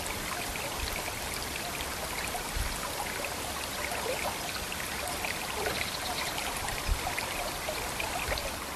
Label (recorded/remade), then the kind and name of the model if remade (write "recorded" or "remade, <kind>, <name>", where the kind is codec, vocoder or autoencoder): recorded